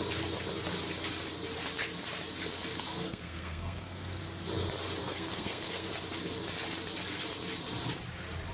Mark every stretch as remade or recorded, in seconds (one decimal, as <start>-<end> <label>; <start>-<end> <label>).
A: 0.0-2.9 recorded; 2.9-4.2 remade; 4.2-5.0 recorded; 5.0-5.9 remade; 5.9-8.5 recorded